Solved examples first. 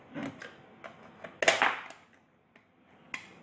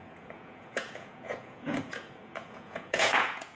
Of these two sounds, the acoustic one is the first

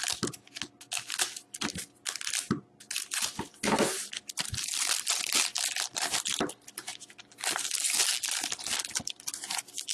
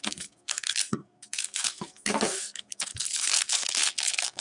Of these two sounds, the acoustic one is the first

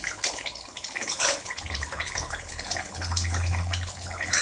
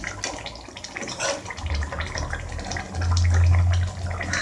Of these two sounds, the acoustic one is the second